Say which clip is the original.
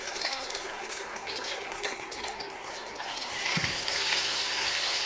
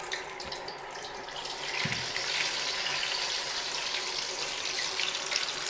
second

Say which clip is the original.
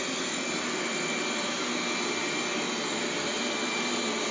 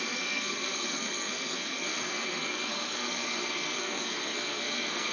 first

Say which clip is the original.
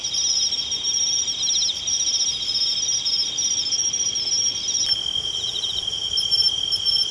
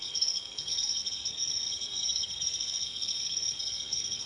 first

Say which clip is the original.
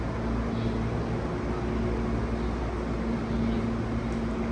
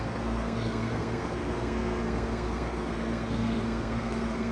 first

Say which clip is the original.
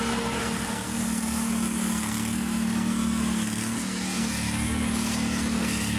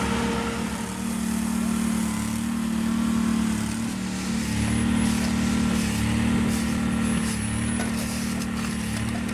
second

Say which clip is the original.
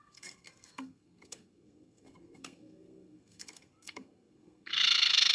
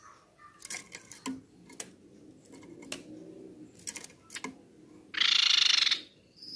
second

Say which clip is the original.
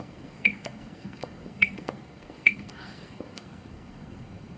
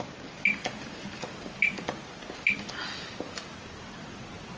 second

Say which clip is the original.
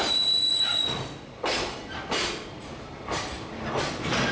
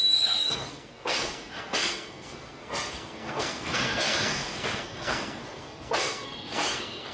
first